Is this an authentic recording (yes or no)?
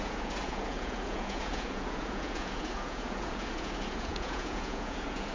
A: no